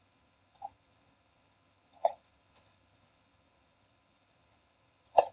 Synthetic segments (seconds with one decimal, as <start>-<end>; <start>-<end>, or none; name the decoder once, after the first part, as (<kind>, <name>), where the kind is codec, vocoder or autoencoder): 0.0-5.3 (vocoder, HiFi-GAN)